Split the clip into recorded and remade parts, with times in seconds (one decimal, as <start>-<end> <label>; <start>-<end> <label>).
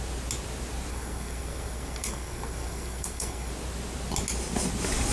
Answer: 0.0-0.9 recorded; 0.9-3.5 remade; 3.5-5.1 recorded